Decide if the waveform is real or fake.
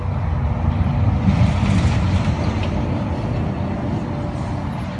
real